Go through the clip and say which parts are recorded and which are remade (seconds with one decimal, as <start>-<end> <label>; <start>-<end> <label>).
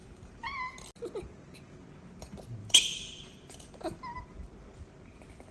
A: 0.0-0.5 remade; 0.5-2.6 recorded; 2.6-4.2 remade; 4.2-5.5 recorded